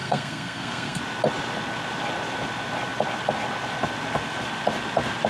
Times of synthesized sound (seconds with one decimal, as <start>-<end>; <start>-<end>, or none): 0.0-1.0